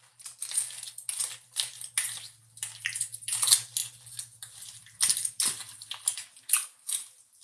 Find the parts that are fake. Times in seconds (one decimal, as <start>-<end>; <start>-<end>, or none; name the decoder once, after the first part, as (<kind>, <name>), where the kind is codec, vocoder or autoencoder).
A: none